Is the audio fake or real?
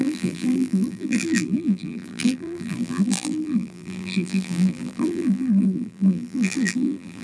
fake